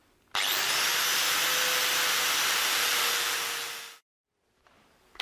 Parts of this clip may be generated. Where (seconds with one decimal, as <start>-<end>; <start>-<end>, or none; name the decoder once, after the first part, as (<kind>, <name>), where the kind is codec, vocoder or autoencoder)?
none